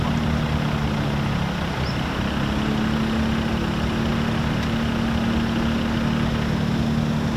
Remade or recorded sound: recorded